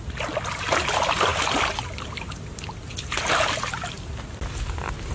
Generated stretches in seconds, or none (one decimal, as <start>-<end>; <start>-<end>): none